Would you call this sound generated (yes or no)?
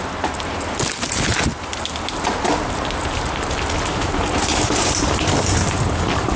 no